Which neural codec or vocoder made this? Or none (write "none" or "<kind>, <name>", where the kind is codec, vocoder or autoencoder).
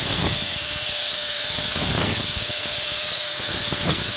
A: codec, SNAC